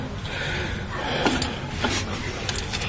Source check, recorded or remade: recorded